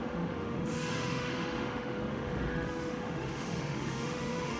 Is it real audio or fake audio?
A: fake